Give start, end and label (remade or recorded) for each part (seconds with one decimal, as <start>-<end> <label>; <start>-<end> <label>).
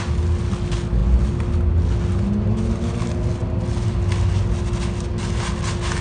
0.0-6.0 recorded